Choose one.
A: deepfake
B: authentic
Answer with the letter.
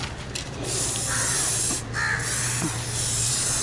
B